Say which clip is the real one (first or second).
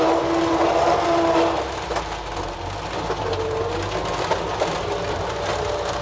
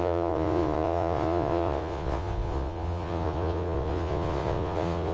first